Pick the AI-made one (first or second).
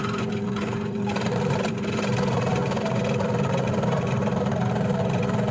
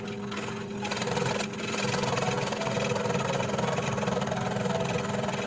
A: first